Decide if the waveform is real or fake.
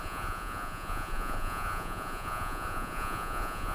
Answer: fake